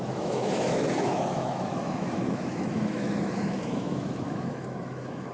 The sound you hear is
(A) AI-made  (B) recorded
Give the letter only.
A